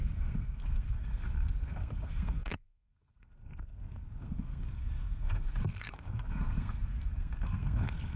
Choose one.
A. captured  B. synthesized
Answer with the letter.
B